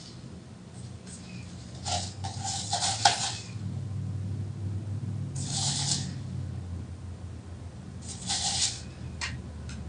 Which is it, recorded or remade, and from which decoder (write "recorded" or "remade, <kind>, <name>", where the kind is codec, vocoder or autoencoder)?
recorded